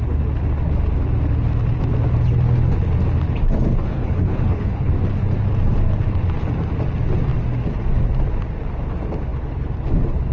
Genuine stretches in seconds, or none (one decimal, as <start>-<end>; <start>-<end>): 0.0-3.7; 4.9-10.3